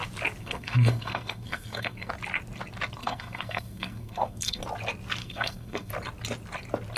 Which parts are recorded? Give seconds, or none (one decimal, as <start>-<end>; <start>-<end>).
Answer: 0.0-0.4; 2.1-3.0; 4.6-5.2; 5.9-7.0